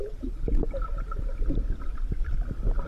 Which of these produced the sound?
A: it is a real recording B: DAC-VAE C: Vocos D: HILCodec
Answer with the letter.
A